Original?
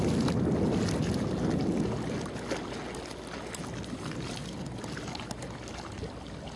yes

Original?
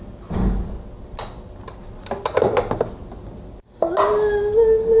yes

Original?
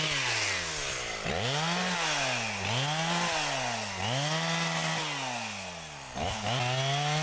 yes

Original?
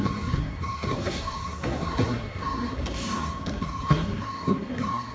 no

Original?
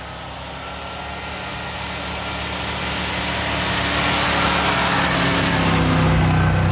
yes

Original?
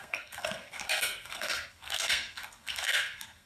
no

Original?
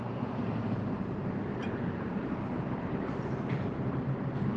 no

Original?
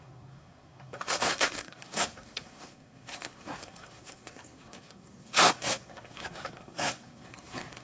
no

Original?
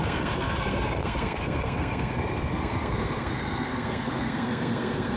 no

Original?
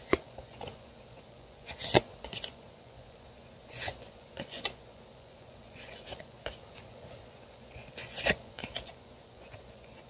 no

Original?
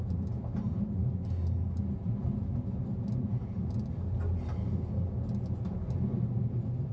yes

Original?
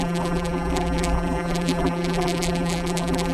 no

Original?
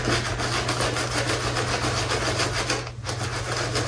yes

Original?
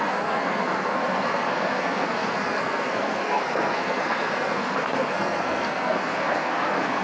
no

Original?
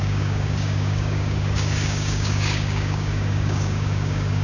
no